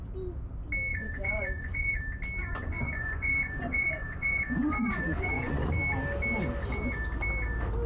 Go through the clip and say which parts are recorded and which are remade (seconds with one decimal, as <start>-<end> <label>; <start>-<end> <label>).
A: 0.0-0.9 recorded; 0.9-2.0 remade; 2.0-2.4 recorded; 2.4-5.7 remade; 5.7-7.9 recorded